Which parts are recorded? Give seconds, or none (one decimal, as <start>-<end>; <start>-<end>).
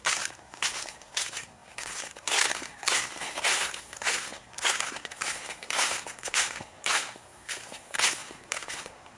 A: none